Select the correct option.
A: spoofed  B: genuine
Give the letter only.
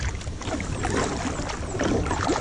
B